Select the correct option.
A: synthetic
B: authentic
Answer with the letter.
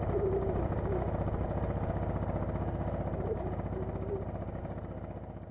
B